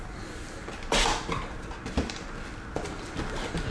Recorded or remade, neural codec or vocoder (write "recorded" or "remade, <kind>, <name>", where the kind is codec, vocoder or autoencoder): remade, vocoder, BigVGAN v2